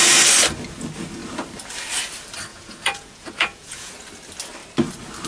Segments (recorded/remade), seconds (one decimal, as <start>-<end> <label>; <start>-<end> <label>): 0.0-2.5 recorded; 2.5-3.9 remade; 3.9-5.3 recorded

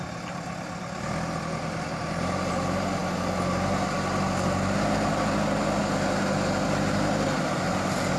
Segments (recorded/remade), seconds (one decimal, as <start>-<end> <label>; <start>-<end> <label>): 0.0-8.2 recorded

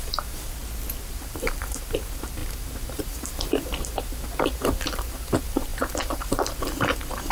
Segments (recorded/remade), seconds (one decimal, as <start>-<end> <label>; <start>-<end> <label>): 0.0-0.6 remade; 0.6-1.1 recorded; 1.1-7.3 remade

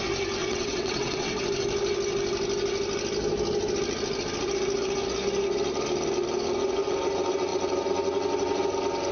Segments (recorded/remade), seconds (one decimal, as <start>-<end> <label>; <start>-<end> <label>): 0.0-0.4 recorded; 0.4-1.4 remade; 1.4-9.1 recorded

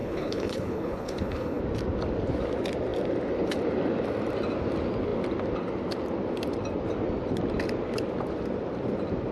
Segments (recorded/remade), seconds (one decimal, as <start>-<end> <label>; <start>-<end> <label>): 0.0-1.6 remade; 1.6-9.3 recorded

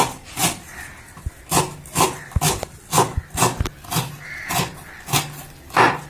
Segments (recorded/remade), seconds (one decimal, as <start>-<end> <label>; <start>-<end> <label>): 0.0-6.1 recorded

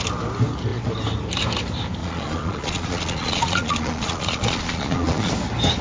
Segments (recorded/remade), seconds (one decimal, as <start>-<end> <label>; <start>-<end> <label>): 0.0-2.0 recorded; 2.0-5.3 remade; 5.3-5.8 recorded